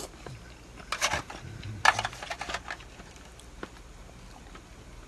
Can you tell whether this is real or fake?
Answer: real